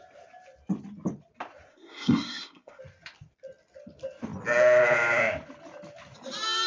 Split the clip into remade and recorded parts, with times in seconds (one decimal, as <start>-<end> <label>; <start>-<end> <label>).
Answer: 0.0-1.7 recorded; 1.7-2.8 remade; 2.8-6.7 recorded